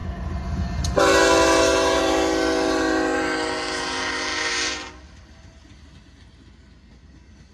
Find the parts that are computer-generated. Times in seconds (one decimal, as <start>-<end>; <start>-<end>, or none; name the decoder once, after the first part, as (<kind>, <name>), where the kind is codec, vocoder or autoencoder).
none